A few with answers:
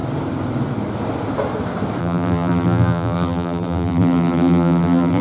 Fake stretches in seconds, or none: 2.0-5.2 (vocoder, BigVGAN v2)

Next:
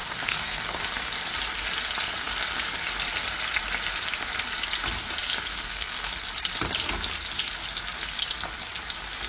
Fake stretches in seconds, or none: 0.0-0.8 (codec, SNAC); 5.5-6.1